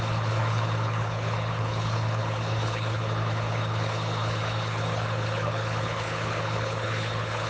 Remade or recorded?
remade